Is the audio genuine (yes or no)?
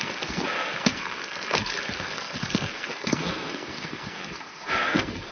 no